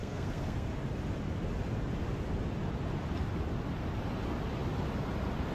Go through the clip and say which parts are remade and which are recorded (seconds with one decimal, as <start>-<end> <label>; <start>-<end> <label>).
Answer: 0.0-0.7 remade; 0.7-5.5 recorded